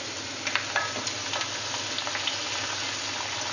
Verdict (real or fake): real